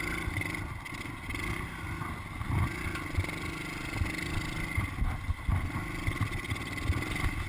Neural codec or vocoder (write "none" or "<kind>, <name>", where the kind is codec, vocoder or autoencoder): none